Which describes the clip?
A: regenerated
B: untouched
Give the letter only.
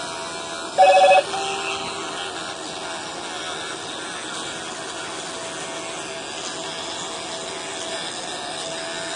B